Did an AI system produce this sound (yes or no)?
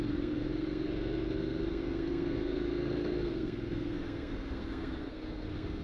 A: yes